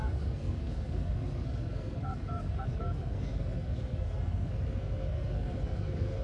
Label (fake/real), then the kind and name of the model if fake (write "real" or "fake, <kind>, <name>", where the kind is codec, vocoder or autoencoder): fake, codec, SNAC